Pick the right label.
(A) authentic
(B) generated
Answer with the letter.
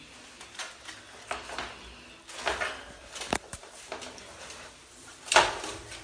A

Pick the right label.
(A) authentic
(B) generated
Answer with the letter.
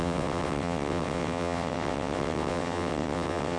B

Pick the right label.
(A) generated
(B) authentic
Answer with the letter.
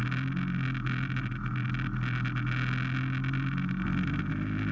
B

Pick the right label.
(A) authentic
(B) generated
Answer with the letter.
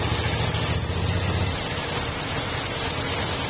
A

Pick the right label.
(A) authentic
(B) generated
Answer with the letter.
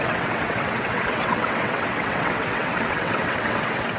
B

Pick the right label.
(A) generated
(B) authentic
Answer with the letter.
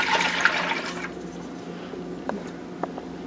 B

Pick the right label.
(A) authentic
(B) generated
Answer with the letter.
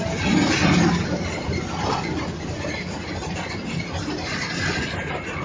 A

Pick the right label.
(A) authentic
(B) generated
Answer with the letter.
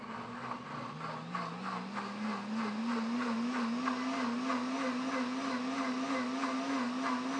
A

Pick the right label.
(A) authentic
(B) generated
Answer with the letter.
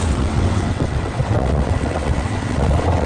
B